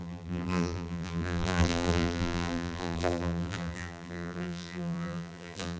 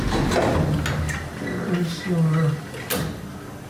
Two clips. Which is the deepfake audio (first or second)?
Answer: first